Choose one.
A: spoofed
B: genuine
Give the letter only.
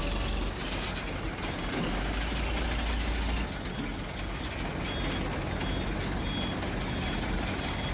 B